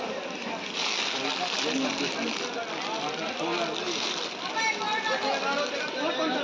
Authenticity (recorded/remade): recorded